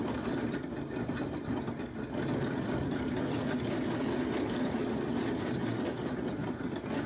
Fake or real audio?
real